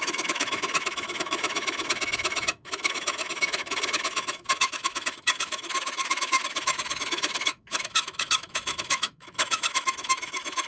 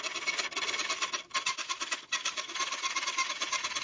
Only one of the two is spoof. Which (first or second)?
first